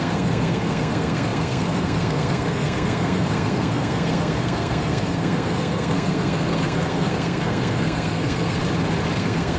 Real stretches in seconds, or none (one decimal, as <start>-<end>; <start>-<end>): 8.6-9.2